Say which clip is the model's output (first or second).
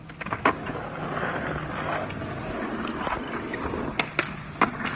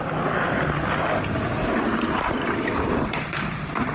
second